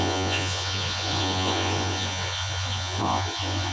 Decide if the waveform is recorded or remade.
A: remade